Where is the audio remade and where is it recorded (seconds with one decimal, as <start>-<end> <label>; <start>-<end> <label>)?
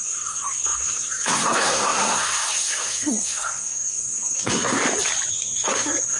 0.0-4.8 remade; 4.8-5.3 recorded; 5.3-6.2 remade